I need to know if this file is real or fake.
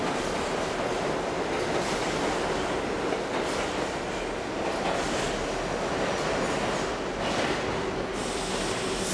real